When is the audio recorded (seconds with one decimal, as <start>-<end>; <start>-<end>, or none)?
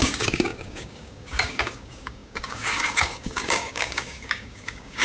none